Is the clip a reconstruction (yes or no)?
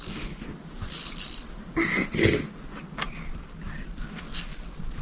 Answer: no